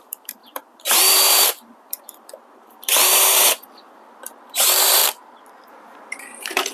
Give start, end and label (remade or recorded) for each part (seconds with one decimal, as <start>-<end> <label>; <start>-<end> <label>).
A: 0.0-5.0 remade; 5.0-5.7 recorded; 5.7-6.7 remade